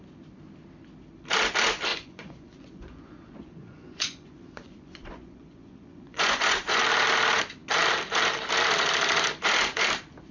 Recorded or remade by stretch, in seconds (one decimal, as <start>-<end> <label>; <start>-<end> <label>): 0.0-1.9 recorded; 1.9-6.8 remade; 6.8-10.3 recorded